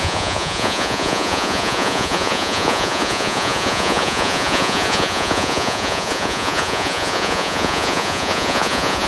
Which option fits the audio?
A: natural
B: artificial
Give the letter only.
B